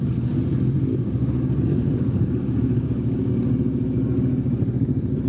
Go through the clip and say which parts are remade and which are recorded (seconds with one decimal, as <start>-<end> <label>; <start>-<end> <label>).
0.0-0.9 recorded; 0.9-3.3 remade; 3.3-5.3 recorded